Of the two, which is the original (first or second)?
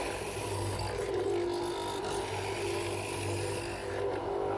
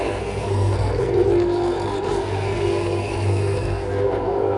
first